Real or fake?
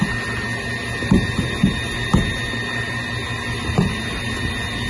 real